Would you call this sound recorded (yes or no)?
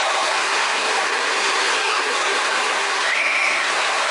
no